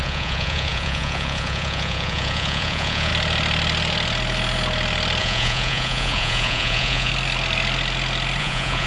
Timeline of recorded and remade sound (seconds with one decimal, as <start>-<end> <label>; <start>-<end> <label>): 0.0-3.1 remade; 3.1-5.2 recorded; 5.2-7.1 remade; 7.1-8.4 recorded; 8.4-8.9 remade